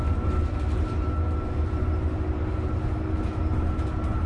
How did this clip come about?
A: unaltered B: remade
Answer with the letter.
A